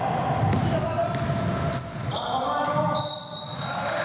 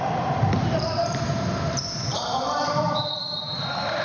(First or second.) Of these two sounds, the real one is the first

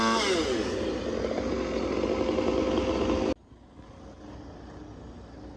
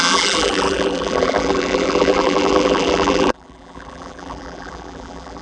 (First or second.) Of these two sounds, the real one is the first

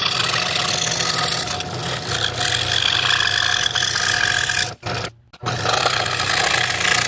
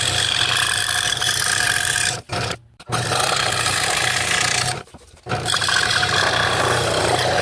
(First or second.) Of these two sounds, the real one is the first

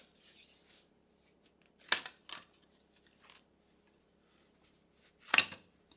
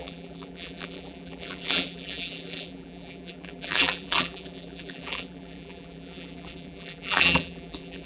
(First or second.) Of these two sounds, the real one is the first